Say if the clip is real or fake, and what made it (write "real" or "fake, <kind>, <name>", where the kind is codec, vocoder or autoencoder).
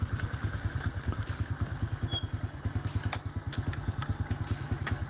real